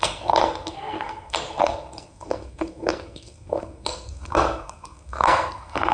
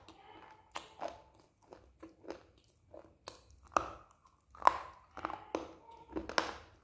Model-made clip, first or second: first